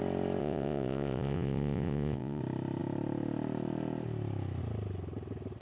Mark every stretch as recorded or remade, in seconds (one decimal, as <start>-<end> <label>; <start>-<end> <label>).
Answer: 0.0-0.4 recorded; 0.4-2.4 remade; 2.4-5.6 recorded